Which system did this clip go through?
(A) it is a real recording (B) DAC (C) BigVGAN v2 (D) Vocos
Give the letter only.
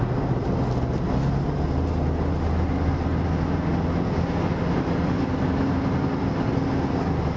A